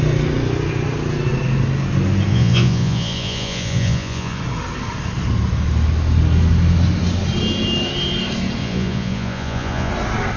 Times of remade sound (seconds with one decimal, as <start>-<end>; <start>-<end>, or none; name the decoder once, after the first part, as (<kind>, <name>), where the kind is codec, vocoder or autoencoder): 2.3-4.4 (vocoder, Vocos); 8.6-9.9